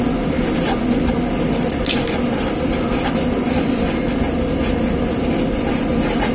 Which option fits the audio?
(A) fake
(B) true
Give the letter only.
B